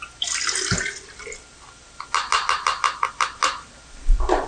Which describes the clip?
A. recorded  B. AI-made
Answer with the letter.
A